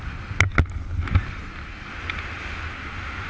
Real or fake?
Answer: real